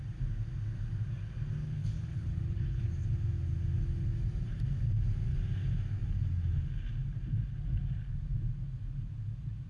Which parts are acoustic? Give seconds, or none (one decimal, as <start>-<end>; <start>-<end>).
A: 0.0-1.8; 2.9-9.7

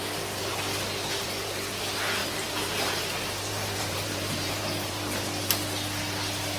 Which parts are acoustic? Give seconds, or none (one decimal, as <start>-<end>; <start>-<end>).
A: 0.0-2.2; 5.2-6.6

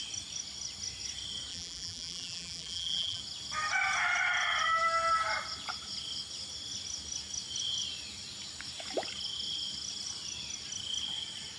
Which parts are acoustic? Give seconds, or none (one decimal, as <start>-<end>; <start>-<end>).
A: 0.0-1.5; 3.2-11.6